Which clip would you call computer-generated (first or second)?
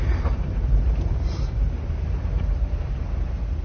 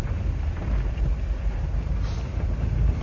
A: first